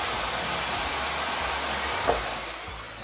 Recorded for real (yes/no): yes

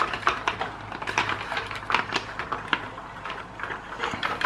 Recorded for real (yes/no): yes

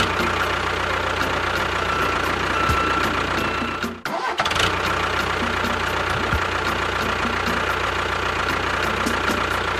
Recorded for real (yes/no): yes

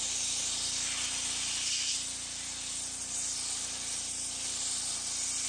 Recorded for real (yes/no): yes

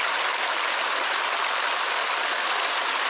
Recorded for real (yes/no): yes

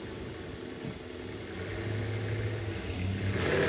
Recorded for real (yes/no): yes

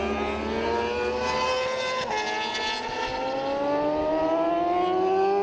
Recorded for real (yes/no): yes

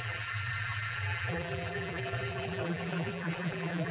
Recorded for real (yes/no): no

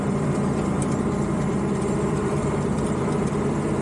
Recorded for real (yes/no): no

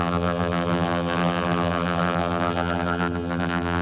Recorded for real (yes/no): no